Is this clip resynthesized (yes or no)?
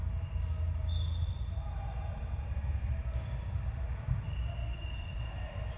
no